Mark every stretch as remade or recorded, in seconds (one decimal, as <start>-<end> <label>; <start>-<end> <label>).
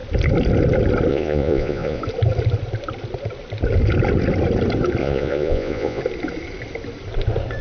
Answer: 0.0-1.1 recorded; 1.1-2.0 remade; 2.0-5.0 recorded; 5.0-6.0 remade; 6.0-7.6 recorded